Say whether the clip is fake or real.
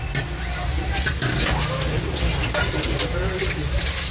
real